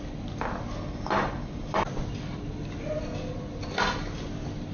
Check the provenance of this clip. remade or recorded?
recorded